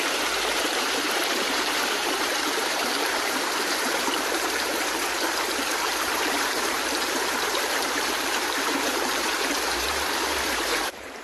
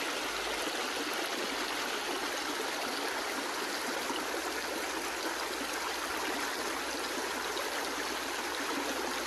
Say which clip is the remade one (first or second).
first